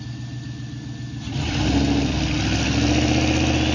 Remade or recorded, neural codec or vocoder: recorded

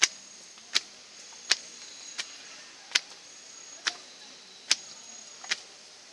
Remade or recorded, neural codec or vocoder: recorded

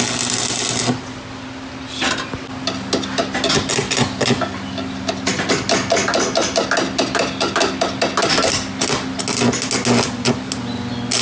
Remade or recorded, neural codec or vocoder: recorded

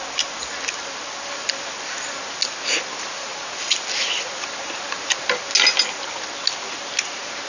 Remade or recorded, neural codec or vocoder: recorded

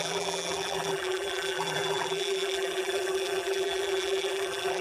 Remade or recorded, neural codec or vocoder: remade, vocoder, BigVGAN v2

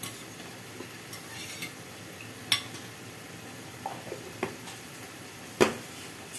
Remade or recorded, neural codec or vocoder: recorded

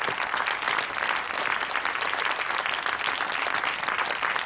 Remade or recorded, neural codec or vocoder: recorded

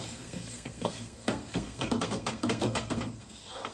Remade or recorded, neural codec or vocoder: remade, codec, SNAC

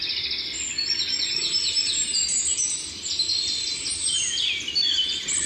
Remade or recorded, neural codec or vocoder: recorded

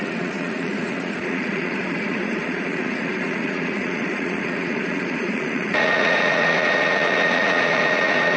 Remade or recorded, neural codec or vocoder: remade, vocoder, Vocos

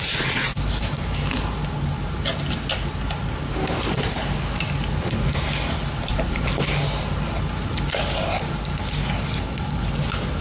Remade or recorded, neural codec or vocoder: recorded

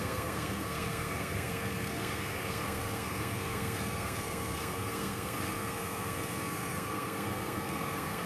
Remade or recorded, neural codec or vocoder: remade, codec, SNAC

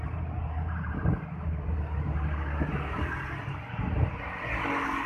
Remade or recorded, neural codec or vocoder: recorded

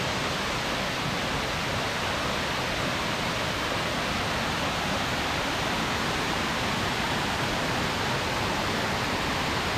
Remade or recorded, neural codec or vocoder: recorded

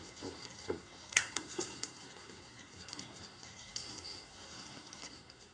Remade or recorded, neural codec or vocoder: remade, codec, SNAC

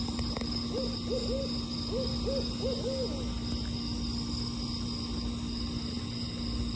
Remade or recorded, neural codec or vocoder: recorded